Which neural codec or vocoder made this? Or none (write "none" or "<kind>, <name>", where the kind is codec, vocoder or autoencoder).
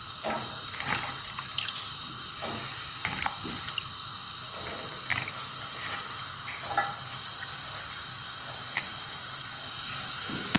none